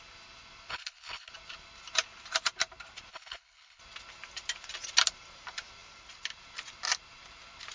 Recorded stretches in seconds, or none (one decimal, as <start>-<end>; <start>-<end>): 0.0-0.7; 1.3-3.1; 3.8-7.7